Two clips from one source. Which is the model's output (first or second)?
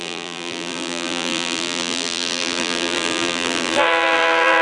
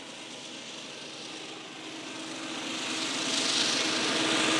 first